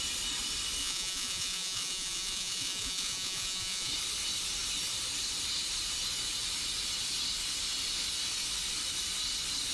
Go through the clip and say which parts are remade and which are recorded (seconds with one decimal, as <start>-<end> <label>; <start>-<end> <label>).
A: 0.0-0.8 recorded; 0.8-3.9 remade; 3.9-9.7 recorded